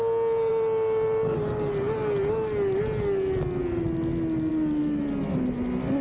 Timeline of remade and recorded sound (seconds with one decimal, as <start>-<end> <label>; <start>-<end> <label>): 0.0-6.0 recorded